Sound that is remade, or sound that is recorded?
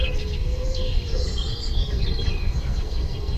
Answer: remade